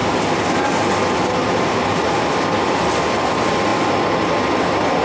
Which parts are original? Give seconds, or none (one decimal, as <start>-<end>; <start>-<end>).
0.0-3.0; 3.7-5.0